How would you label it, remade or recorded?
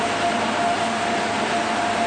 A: recorded